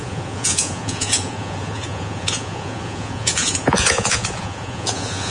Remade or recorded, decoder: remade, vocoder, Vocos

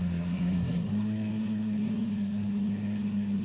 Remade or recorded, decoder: remade, codec, SNAC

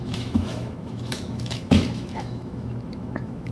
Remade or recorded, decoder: remade, autoencoder, DAC-VAE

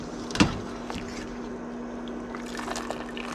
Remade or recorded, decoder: recorded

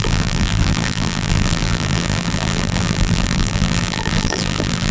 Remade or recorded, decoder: remade, vocoder, BigVGAN v2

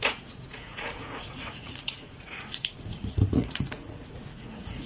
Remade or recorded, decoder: remade, vocoder, Vocos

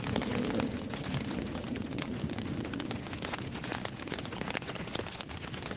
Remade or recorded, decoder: remade, vocoder, Vocos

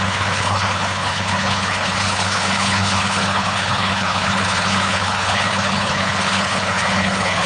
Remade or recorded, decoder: remade, codec, HILCodec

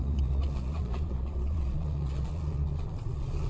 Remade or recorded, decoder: remade, vocoder, Vocos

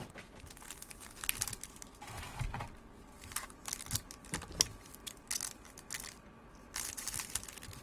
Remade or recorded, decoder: recorded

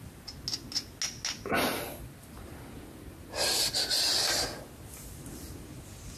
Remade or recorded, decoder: recorded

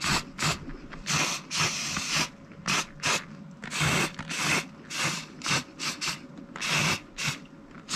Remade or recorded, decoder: recorded